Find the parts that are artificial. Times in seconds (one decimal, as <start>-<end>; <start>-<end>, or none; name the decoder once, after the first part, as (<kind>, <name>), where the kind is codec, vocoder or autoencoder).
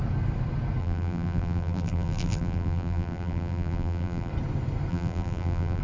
0.8-4.3 (vocoder, BigVGAN v2); 4.9-5.8